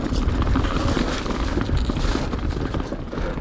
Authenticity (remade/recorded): recorded